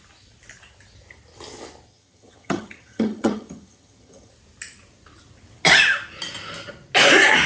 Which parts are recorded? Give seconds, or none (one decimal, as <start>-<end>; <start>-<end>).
0.0-1.9; 4.3-7.5